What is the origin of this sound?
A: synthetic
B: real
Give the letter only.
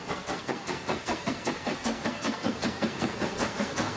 A